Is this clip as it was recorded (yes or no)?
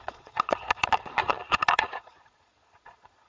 no